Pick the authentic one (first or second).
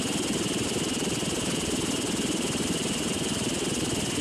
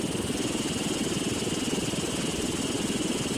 second